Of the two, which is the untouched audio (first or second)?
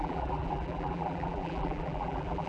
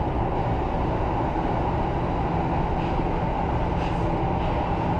second